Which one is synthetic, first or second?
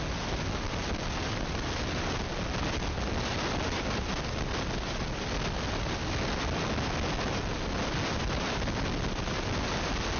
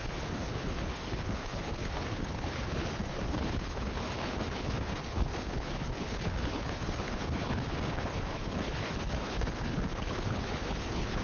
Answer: second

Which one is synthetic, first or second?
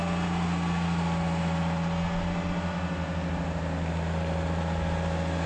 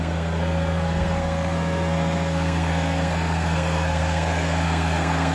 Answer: second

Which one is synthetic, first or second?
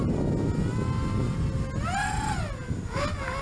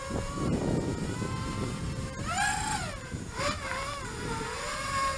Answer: second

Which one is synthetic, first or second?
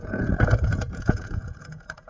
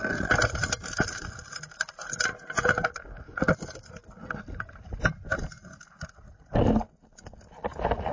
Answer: first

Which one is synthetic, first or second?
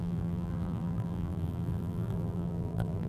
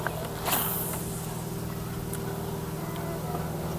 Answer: first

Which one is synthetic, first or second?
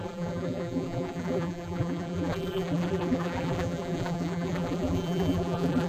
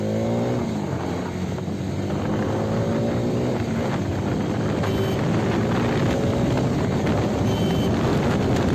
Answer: first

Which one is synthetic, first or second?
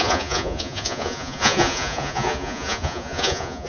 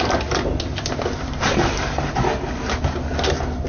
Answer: first